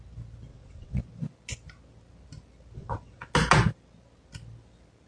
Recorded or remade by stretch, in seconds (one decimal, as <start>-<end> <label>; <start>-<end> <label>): 0.0-0.5 recorded; 0.5-1.0 remade; 1.0-2.8 recorded; 2.8-3.3 remade; 3.3-5.1 recorded